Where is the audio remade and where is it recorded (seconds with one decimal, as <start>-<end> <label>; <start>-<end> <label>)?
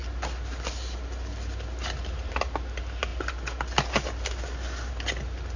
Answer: 0.0-5.6 recorded